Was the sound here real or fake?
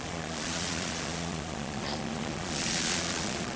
fake